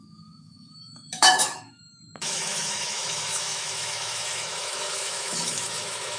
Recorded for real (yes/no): no